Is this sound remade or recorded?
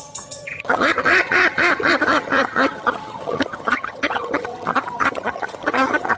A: remade